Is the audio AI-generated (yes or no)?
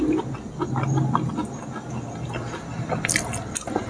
no